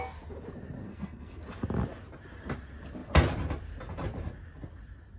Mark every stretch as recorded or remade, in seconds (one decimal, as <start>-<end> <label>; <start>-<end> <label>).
0.0-0.8 recorded; 0.8-1.4 remade; 1.4-5.2 recorded